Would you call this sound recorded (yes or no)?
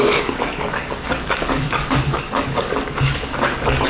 no